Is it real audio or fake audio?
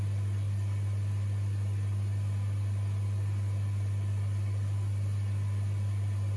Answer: real